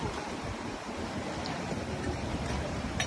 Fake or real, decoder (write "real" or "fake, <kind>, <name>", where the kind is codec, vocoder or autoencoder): fake, vocoder, BigVGAN v2